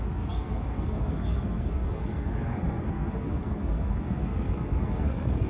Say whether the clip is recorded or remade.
remade